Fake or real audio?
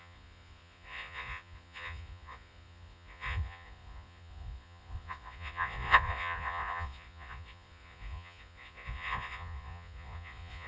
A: fake